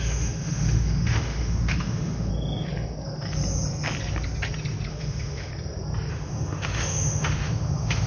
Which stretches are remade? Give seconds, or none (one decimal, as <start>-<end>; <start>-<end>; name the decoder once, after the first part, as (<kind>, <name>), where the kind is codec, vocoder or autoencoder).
0.0-2.3 (autoencoder, DAC-VAE); 4.9-5.5; 6.1-8.1